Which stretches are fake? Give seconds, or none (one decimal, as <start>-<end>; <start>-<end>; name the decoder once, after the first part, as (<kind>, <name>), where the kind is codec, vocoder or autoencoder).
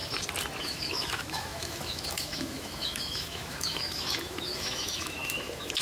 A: 0.6-5.8 (autoencoder, DAC-VAE)